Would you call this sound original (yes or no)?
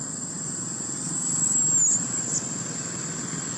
yes